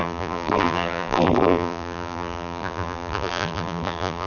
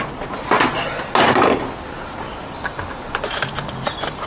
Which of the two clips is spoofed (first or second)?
first